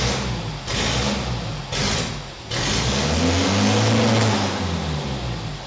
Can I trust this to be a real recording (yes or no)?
yes